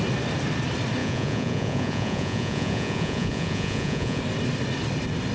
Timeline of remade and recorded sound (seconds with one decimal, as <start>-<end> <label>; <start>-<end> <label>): 0.0-1.0 recorded; 1.0-4.2 remade; 4.2-5.3 recorded